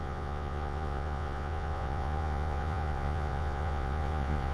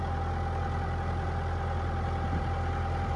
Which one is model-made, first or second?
first